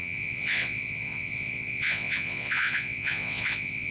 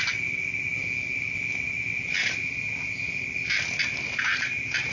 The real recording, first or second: second